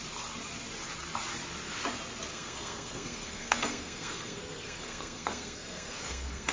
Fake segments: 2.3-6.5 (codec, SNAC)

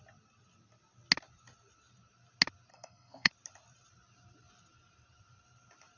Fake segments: 2.7-3.3 (codec, SNAC)

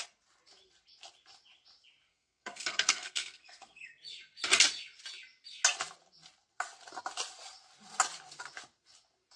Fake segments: 2.1-3.9 (codec, SNAC)

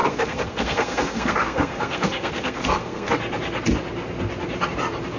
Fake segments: 0.0-3.1 (codec, SNAC)

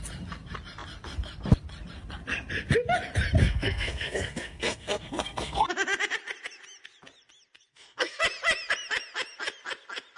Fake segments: 3.4-5.7 (codec, SNAC); 7.7-8.2

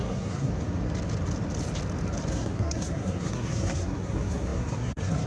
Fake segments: 0.0-0.5 (codec, SNAC); 2.3-5.3

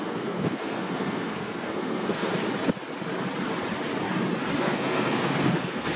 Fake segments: 0.0-2.3 (codec, SNAC); 4.6-6.0

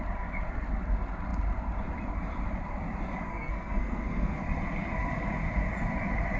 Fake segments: 3.3-4.4 (codec, SNAC)